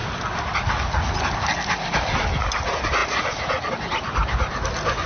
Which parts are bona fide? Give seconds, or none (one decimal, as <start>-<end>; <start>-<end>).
0.0-5.1

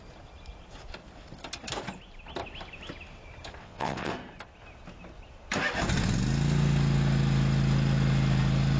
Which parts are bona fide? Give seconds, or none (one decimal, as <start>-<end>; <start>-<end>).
0.0-3.6; 4.1-8.8

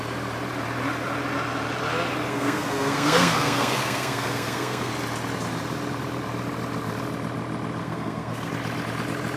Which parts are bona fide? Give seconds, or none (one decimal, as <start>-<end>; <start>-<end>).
0.0-2.3; 4.9-7.8; 8.5-9.4